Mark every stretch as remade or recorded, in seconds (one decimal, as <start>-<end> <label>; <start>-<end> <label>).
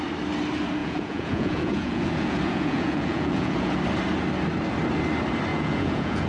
0.0-0.8 recorded; 0.8-3.8 remade; 3.8-5.5 recorded; 5.5-6.3 remade